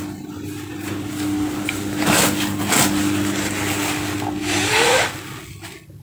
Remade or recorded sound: recorded